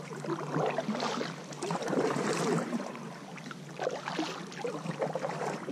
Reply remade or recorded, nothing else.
recorded